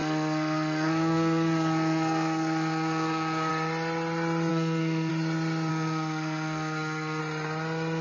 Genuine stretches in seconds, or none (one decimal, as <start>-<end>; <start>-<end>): 3.5-4.5; 5.1-5.7; 7.2-8.0